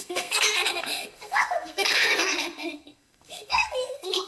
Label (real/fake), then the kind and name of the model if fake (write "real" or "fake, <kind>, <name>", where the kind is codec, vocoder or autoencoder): fake, codec, SNAC